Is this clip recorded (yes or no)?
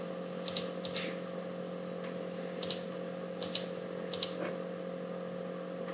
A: yes